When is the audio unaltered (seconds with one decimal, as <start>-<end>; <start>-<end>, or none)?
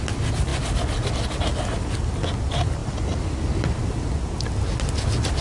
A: 0.0-5.4